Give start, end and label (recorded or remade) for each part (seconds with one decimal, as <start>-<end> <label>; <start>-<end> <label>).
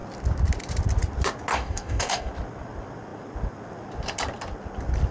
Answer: 0.0-1.5 recorded; 1.5-2.3 remade; 2.3-5.1 recorded